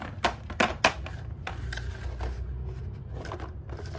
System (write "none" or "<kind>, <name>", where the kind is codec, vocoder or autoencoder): none